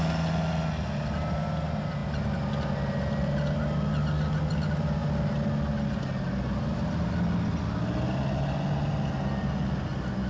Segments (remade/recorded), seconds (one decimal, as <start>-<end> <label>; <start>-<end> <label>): 0.0-10.3 recorded